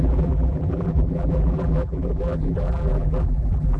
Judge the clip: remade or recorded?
remade